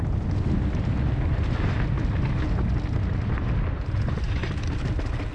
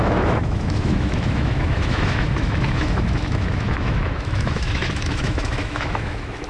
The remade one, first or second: second